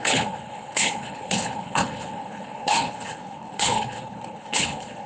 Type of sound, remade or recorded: remade